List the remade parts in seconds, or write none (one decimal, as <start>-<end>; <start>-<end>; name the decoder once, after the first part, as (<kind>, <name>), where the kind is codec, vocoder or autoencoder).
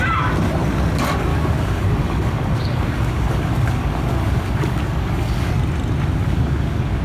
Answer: 1.3-5.5 (codec, DAC); 6.2-7.0